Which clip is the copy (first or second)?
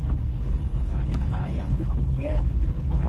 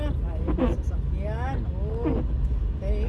first